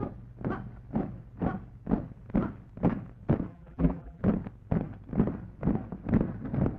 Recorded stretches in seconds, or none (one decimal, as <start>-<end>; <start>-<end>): 0.0-3.5; 4.2-6.8